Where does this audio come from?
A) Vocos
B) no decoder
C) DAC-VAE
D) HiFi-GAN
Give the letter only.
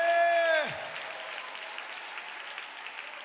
B